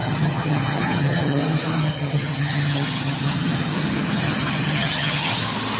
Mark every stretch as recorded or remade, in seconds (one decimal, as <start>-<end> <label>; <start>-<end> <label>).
0.0-1.4 remade; 1.4-1.8 recorded; 1.8-5.3 remade; 5.3-5.8 recorded